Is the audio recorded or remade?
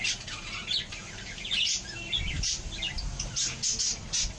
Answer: recorded